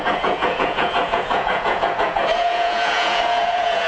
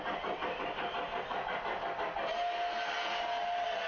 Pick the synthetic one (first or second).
first